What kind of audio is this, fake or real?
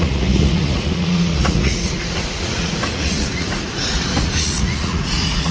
fake